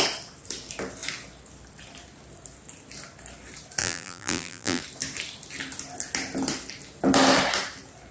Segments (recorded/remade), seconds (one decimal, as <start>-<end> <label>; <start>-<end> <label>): 0.0-3.8 recorded; 3.8-4.8 remade; 4.8-8.1 recorded